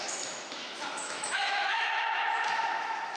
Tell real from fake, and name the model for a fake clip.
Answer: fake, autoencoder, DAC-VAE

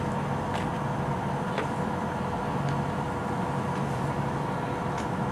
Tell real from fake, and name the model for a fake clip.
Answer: real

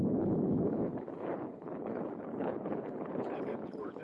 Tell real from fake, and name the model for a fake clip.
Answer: fake, codec, HILCodec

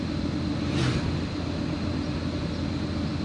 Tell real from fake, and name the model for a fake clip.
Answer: real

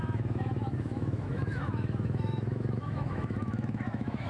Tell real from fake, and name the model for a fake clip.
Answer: fake, autoencoder, DAC-VAE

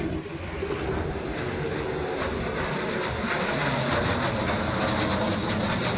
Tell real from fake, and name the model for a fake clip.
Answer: real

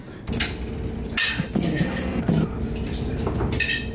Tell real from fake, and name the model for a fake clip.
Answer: real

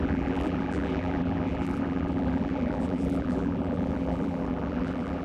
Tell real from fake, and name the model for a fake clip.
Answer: fake, vocoder, BigVGAN v2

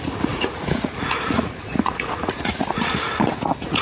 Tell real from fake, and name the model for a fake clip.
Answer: fake, vocoder, Vocos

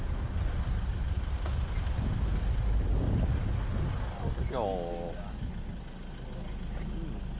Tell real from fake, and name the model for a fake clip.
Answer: real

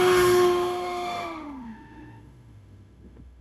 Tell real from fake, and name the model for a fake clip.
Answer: fake, autoencoder, DAC-VAE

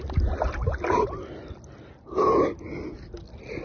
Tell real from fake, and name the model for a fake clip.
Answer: real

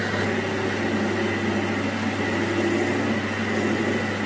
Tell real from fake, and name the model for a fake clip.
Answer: real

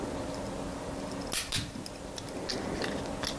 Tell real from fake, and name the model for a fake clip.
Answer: real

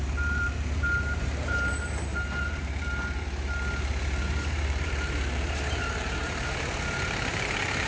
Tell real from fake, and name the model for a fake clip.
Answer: fake, vocoder, BigVGAN v2